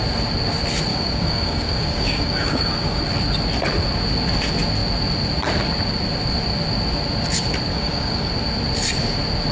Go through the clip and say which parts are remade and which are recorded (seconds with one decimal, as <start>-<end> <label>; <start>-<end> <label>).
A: 0.0-0.9 recorded; 0.9-3.0 remade; 3.0-7.7 recorded; 7.7-8.3 remade; 8.3-9.5 recorded